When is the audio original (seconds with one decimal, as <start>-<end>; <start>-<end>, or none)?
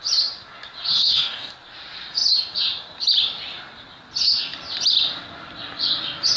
0.0-0.9; 1.5-6.4